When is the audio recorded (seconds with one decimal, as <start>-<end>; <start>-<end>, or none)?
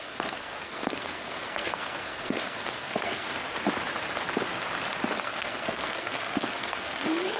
3.3-5.2